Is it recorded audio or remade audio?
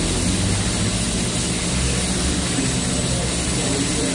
recorded